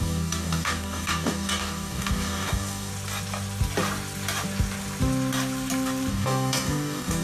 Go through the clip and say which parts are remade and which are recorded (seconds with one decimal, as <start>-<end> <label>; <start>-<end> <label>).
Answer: 0.0-2.9 remade; 2.9-6.1 recorded; 6.1-7.2 remade